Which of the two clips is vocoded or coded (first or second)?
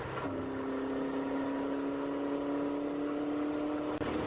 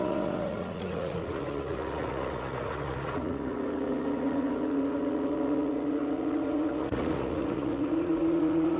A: second